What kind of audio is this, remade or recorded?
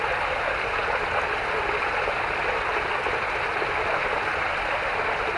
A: recorded